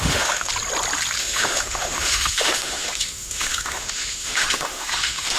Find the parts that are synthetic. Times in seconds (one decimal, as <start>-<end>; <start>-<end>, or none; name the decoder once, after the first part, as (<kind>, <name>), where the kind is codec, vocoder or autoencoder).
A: 0.0-0.5 (autoencoder, DAC-VAE); 1.2-5.4